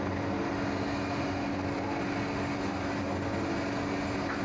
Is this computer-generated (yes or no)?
no